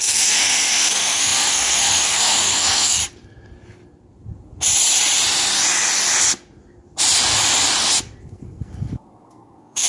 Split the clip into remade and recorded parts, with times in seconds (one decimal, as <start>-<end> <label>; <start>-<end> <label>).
0.0-3.0 remade; 3.0-8.2 recorded; 8.2-9.9 remade